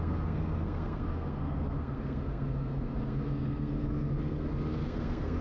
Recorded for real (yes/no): no